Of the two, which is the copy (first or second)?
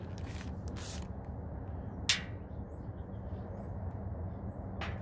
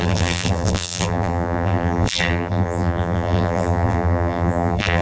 second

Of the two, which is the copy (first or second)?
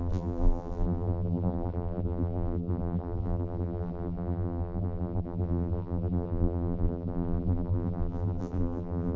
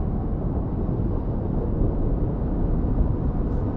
first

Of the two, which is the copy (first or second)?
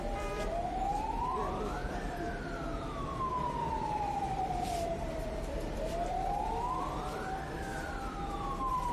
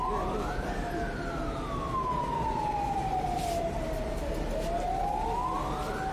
first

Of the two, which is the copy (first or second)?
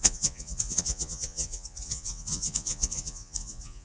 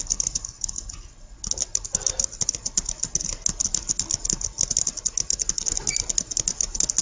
first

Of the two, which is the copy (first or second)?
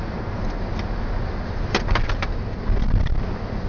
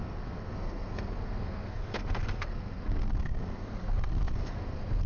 second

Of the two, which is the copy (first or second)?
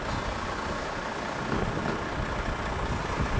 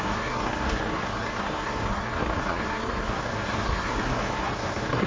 second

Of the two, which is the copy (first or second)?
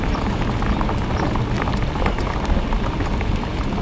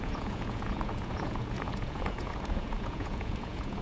second